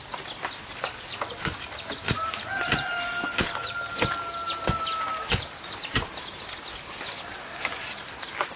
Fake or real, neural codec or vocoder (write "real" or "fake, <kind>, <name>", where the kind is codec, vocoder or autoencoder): real